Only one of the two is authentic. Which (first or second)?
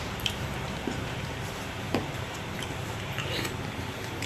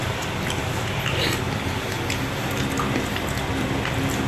second